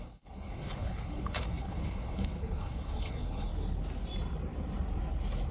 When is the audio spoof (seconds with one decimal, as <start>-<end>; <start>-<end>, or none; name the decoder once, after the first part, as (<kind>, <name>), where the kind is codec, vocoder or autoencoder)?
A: 0.0-3.5 (codec, HILCodec)